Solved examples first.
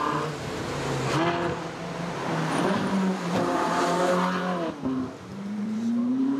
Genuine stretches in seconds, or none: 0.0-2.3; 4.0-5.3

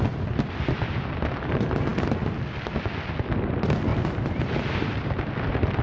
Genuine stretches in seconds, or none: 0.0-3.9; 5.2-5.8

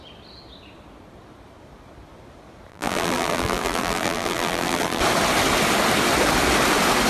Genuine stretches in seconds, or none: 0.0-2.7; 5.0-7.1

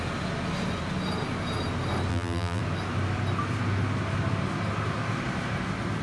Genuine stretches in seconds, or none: 0.0-2.1; 2.6-6.0